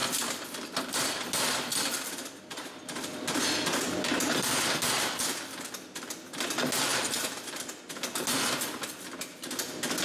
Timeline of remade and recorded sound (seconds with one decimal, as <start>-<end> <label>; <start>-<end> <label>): 0.0-5.2 remade; 5.2-6.9 recorded; 6.9-7.9 remade; 7.9-10.0 recorded